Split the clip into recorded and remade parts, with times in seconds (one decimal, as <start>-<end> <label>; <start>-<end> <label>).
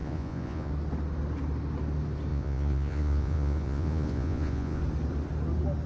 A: 0.0-0.7 remade; 0.7-2.3 recorded; 2.3-4.8 remade; 4.8-5.9 recorded